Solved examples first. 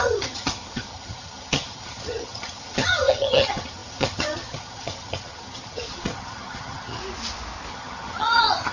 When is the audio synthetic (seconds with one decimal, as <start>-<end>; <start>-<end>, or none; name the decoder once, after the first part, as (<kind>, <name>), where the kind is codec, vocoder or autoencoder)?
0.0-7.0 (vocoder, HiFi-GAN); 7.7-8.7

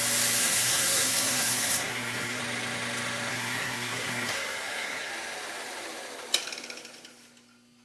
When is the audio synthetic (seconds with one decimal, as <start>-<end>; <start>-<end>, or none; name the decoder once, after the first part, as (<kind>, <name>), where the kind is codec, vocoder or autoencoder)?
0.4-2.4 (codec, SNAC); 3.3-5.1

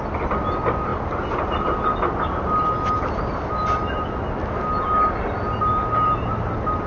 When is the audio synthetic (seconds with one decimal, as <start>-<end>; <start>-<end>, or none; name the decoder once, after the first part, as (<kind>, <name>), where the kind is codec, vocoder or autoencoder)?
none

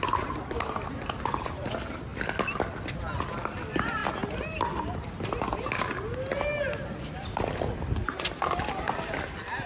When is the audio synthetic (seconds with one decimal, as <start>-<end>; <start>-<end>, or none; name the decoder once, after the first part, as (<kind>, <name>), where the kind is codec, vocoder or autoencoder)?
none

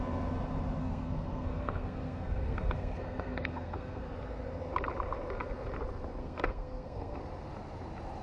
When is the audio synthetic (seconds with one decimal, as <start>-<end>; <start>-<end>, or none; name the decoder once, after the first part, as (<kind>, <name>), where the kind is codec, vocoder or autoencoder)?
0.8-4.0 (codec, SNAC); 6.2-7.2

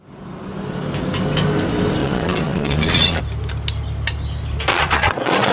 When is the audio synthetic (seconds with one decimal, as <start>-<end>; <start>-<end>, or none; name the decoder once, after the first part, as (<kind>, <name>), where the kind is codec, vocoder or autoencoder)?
2.0-3.2 (vocoder, Vocos); 4.7-5.5